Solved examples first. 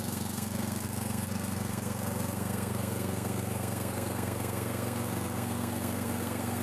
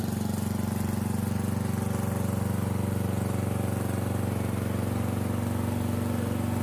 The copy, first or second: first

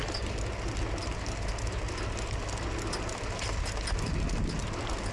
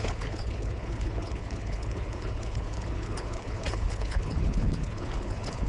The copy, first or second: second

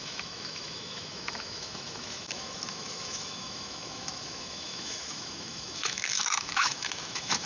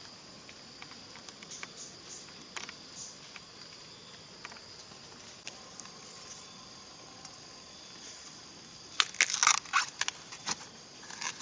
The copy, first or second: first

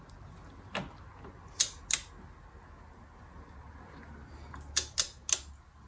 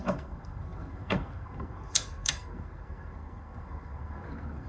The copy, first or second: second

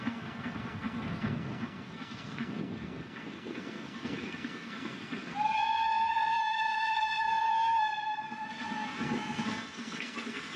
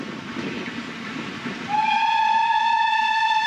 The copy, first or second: first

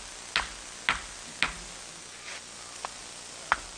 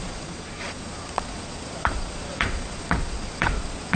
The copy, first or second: second